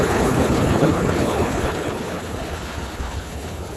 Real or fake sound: fake